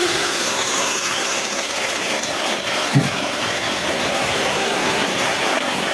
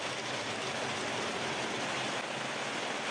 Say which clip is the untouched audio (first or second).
second